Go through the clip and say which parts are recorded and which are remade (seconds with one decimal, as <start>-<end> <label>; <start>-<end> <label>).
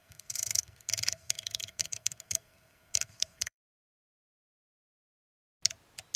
0.0-3.7 remade; 3.7-6.2 recorded